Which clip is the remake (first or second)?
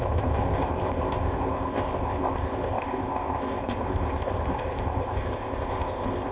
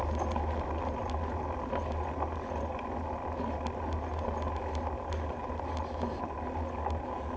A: first